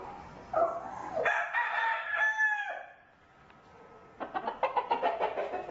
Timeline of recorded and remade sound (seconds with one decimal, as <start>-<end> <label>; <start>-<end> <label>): 0.0-5.7 recorded